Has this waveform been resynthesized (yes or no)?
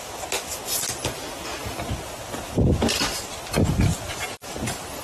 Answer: no